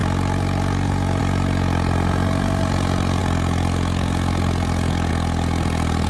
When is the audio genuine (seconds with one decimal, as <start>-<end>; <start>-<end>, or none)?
0.0-6.1